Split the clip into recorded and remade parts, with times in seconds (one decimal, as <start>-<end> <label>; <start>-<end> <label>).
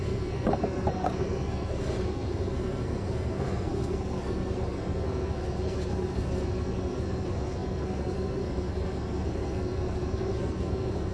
0.0-11.1 remade